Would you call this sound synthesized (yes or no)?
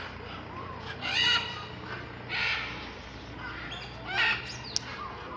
no